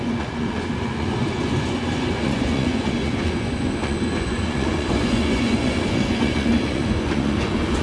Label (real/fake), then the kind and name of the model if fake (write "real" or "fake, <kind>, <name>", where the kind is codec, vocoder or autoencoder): fake, vocoder, Vocos